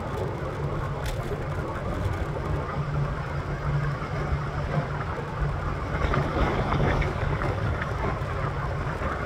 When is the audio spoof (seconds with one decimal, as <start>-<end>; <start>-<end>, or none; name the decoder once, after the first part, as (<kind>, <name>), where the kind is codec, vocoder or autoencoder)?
6.3-7.8 (codec, DAC)